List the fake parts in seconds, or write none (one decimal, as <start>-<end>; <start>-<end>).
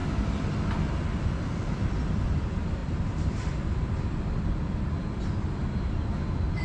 2.8-3.9